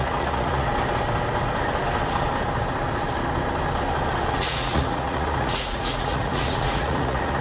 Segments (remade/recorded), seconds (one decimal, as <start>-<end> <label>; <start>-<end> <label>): 0.0-0.7 remade; 0.7-4.3 recorded; 4.3-7.4 remade

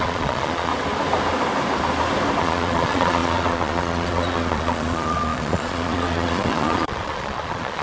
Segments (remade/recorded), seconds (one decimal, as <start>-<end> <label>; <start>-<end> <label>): 0.0-0.7 remade; 0.7-2.4 recorded; 2.4-7.8 remade

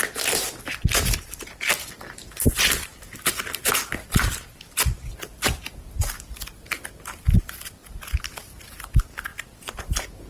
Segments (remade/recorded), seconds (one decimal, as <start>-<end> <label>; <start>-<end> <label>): 0.0-10.3 recorded

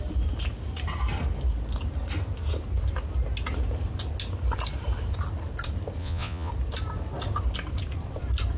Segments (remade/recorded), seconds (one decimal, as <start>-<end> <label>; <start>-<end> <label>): 0.0-6.0 recorded; 6.0-6.5 remade; 6.5-8.6 recorded

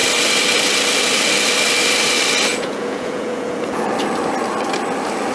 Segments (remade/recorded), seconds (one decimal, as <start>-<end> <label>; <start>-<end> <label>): 0.0-2.5 recorded; 2.5-3.8 remade; 3.8-5.3 recorded

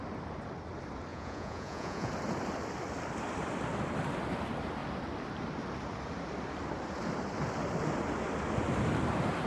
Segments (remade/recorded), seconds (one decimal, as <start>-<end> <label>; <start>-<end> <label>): 0.0-1.1 recorded; 1.1-2.1 remade; 2.1-9.5 recorded

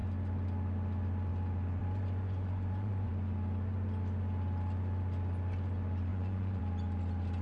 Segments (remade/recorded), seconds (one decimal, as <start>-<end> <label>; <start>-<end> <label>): 0.0-1.8 recorded; 1.8-3.1 remade; 3.1-6.1 recorded; 6.1-6.6 remade; 6.6-7.4 recorded

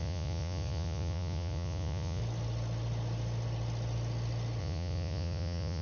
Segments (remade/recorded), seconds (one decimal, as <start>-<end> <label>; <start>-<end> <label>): 0.0-2.2 remade; 2.2-4.6 recorded; 4.6-5.8 remade